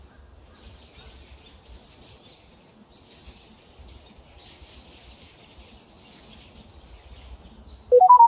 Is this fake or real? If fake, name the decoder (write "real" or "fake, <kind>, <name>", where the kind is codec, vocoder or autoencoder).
real